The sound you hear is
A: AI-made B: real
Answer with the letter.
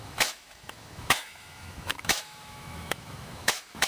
A